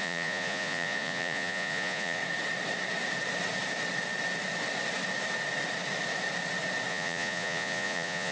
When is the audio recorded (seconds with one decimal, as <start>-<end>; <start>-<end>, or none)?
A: 2.2-6.9